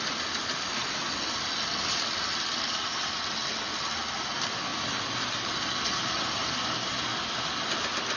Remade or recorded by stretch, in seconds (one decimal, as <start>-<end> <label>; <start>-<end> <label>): 0.0-2.5 recorded; 2.5-3.4 remade; 3.4-4.7 recorded; 4.7-5.7 remade; 5.7-7.1 recorded; 7.1-7.6 remade; 7.6-8.2 recorded